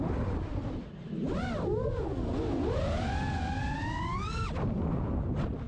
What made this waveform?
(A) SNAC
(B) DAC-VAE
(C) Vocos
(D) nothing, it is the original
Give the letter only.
D